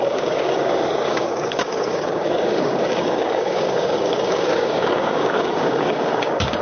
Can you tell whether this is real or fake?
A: fake